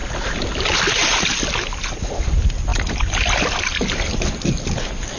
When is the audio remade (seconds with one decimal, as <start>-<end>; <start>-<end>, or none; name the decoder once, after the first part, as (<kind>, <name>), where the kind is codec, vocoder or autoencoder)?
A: none